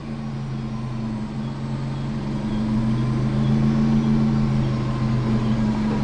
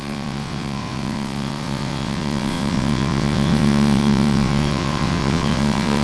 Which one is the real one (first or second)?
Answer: first